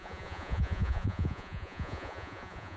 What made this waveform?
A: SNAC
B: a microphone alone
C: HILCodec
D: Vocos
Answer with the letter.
D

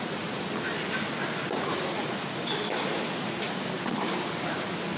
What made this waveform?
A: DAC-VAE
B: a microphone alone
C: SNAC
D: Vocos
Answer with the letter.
B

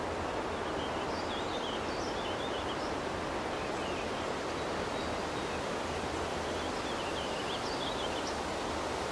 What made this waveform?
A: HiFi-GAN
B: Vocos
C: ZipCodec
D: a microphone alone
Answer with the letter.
D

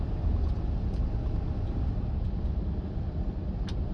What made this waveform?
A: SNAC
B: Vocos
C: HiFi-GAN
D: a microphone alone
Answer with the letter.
D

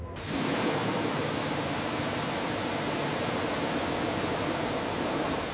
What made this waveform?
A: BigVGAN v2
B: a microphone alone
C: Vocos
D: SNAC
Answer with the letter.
B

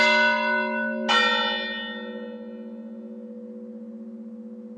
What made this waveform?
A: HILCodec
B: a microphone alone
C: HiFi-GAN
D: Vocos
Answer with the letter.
B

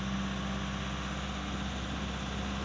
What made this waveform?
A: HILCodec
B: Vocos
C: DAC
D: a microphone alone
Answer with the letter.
D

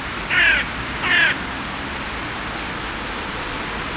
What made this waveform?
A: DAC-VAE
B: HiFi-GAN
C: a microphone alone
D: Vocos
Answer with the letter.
C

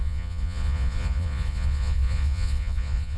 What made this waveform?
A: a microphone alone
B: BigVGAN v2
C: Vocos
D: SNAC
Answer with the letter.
C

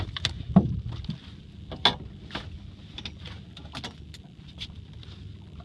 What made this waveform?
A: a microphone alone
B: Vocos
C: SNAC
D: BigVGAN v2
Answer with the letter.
A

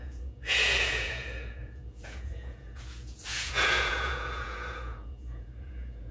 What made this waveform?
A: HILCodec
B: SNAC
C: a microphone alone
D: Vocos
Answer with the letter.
D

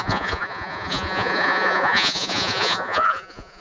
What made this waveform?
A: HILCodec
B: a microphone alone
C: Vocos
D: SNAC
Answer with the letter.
C